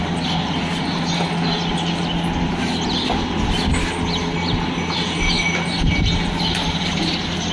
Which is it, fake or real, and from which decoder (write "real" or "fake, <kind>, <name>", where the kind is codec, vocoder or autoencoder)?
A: real